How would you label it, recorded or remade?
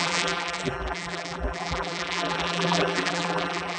remade